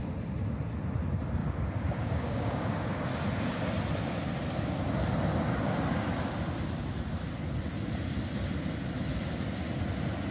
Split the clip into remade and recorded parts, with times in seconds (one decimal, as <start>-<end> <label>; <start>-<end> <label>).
0.0-1.4 recorded; 1.4-3.0 remade; 3.0-10.3 recorded